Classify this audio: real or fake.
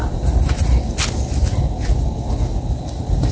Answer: real